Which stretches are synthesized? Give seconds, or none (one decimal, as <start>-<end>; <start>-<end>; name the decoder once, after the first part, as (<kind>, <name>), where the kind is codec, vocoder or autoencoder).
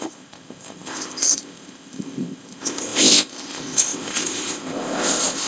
0.0-5.5 (codec, ZipCodec)